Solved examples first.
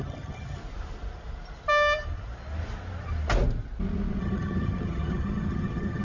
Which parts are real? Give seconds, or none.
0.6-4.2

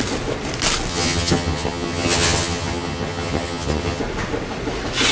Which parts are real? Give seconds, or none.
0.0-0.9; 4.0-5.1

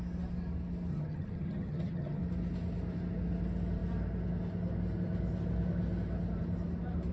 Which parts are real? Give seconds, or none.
0.0-0.9; 2.2-7.1